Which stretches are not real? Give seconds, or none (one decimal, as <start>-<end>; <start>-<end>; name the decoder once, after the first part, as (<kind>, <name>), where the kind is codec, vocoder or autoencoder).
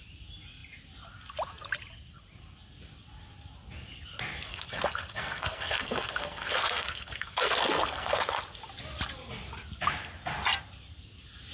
4.5-8.4 (codec, SNAC)